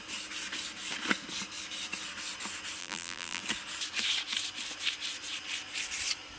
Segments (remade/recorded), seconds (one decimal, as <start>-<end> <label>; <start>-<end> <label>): 0.0-2.8 recorded; 2.8-3.4 remade; 3.4-6.4 recorded